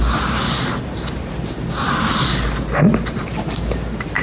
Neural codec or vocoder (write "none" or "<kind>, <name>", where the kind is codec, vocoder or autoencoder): none